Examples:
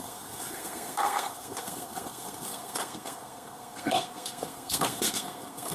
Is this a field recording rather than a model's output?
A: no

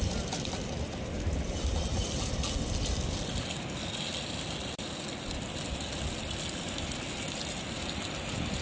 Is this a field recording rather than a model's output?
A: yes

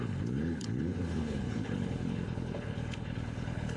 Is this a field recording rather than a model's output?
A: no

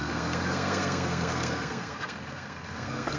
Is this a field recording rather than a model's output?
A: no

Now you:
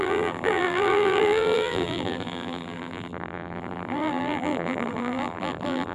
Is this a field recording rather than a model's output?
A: no